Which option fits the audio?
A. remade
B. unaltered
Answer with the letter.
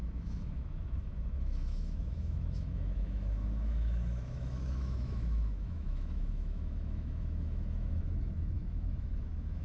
A